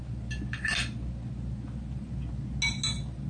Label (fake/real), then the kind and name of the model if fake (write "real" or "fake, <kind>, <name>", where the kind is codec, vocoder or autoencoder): real